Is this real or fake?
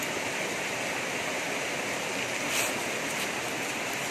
real